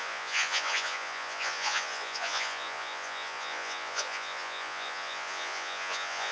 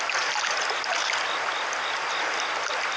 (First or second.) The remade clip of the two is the first